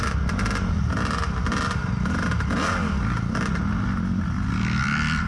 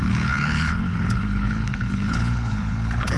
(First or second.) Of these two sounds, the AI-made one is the second